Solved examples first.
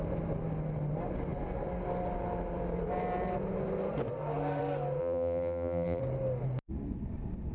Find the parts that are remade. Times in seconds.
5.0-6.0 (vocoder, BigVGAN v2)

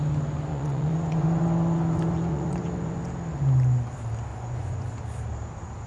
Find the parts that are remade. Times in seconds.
0.5-3.0 (vocoder, Vocos); 4.3-5.0

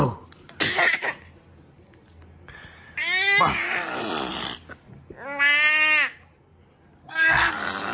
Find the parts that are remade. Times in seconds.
7.0-7.5 (codec, SNAC)